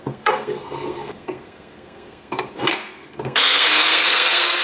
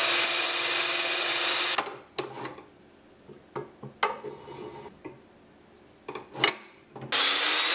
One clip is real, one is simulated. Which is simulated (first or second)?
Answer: first